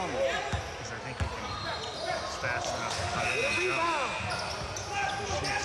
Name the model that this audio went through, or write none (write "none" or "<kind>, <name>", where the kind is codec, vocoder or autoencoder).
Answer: none